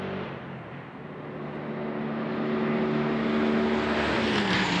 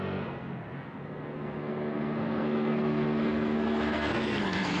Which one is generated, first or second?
second